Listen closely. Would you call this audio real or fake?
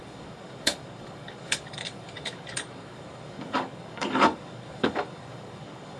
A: fake